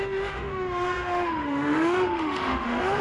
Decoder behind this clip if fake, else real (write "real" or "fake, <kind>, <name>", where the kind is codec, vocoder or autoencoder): fake, autoencoder, DAC-VAE